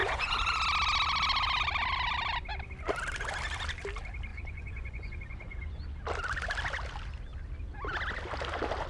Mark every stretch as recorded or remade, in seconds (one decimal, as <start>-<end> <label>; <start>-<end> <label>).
0.0-0.6 remade; 0.6-4.3 recorded; 4.3-5.8 remade; 5.8-8.9 recorded